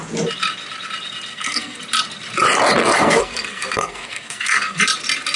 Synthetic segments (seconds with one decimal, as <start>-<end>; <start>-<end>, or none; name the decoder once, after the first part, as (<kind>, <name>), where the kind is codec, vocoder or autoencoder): 1.3-1.8 (codec, SNAC); 2.8-4.8